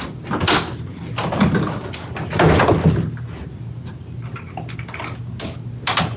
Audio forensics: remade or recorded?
recorded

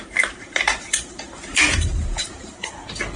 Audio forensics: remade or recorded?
remade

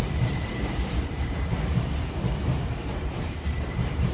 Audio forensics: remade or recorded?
remade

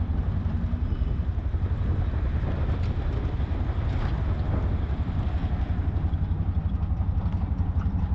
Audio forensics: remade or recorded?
recorded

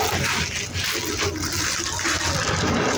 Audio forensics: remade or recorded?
recorded